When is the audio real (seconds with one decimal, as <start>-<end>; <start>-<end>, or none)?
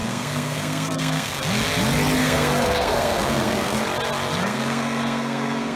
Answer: 1.4-2.2; 3.8-4.4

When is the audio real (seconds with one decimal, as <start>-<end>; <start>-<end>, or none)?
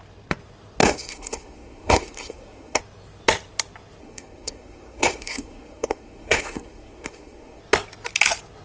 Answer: 0.0-0.8; 2.8-4.0; 7.6-8.6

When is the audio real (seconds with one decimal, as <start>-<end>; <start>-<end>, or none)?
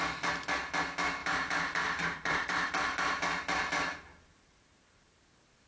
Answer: 0.0-1.2; 4.6-5.7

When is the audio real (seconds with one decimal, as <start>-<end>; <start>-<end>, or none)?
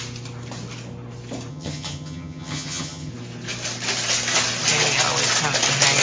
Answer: 0.0-1.5; 3.1-6.0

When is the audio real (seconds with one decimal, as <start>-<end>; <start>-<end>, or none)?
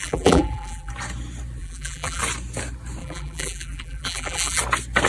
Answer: 0.9-1.6; 2.2-3.0; 4.6-5.1